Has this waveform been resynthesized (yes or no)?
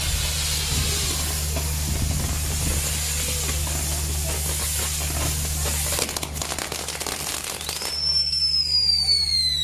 no